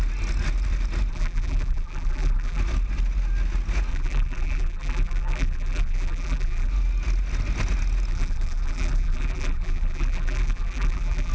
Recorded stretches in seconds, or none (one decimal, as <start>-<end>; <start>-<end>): 0.0-1.1; 2.6-3.9; 6.7-8.1